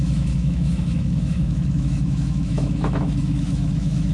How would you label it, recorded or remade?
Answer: remade